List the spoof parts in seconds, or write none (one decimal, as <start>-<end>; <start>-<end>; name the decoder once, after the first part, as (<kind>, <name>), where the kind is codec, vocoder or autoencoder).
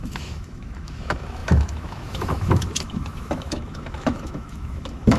0.0-5.2 (autoencoder, DAC-VAE)